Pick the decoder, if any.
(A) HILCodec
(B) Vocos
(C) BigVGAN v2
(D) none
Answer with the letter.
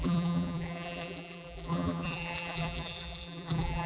C